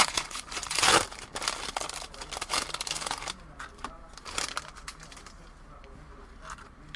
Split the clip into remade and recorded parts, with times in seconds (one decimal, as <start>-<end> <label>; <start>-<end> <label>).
0.0-0.8 remade; 0.8-7.0 recorded